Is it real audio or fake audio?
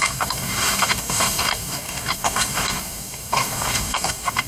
fake